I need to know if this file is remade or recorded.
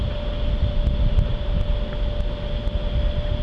recorded